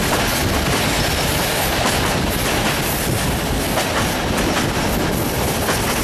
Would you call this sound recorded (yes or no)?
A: yes